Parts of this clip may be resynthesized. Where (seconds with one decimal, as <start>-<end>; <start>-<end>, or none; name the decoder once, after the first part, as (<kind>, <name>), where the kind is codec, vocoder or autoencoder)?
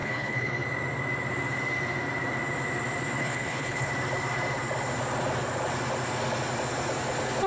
0.0-0.5 (codec, HILCodec); 3.2-3.9